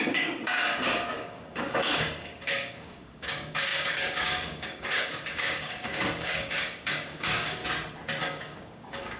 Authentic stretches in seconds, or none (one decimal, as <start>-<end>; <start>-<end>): 7.6-8.2